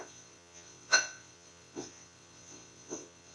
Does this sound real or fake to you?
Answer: fake